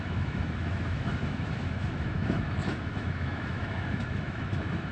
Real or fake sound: fake